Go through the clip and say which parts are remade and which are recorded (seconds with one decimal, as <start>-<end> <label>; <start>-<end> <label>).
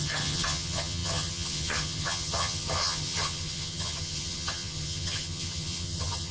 0.0-6.3 remade